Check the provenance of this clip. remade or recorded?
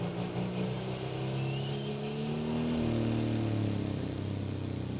recorded